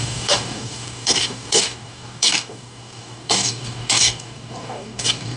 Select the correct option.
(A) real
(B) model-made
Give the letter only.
B